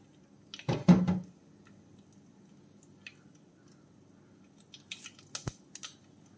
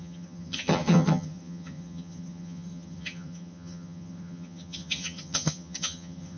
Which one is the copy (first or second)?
second